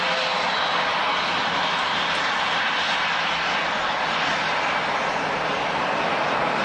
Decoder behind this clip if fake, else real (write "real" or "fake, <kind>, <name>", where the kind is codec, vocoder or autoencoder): real